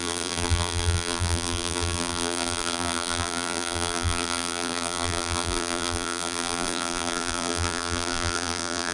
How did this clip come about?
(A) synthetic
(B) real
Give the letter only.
A